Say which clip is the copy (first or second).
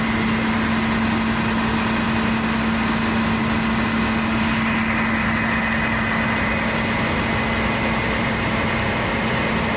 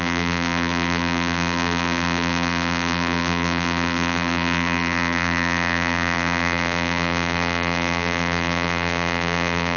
second